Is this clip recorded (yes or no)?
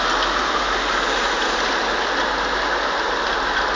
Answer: yes